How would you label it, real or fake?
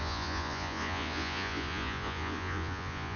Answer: fake